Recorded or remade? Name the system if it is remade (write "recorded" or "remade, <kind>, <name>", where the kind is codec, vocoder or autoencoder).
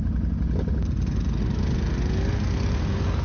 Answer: recorded